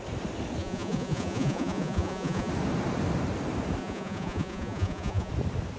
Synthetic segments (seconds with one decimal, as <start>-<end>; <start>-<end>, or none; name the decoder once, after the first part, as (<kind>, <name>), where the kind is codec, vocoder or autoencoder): 0.6-2.5 (vocoder, Vocos); 3.8-5.3